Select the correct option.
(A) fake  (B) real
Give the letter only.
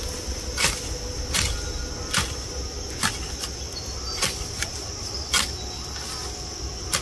B